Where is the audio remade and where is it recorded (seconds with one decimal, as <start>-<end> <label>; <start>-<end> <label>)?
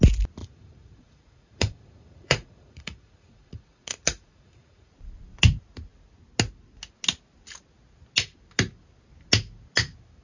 0.0-0.4 recorded; 0.4-4.9 remade; 4.9-10.2 recorded